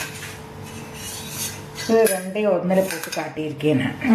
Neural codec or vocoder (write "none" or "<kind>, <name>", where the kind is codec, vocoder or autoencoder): none